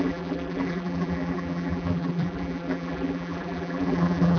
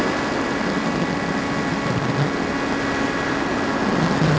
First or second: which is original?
second